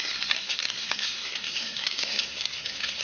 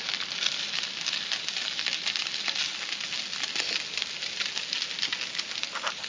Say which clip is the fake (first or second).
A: first